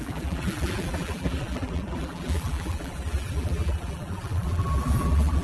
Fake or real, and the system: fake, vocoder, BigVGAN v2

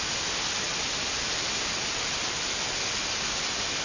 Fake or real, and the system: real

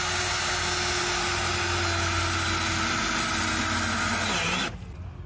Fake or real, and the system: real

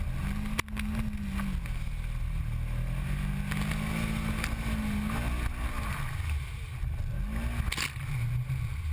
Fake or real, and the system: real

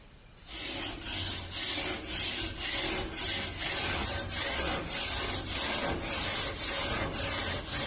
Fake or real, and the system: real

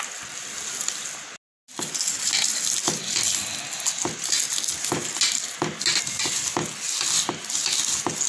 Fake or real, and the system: real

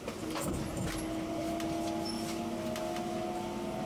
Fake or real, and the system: real